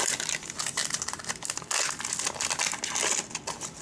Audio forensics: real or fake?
real